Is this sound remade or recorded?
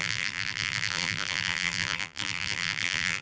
remade